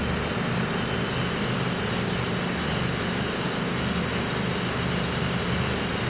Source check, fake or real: real